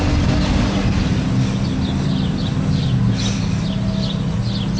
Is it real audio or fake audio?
real